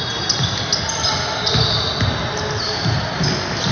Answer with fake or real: real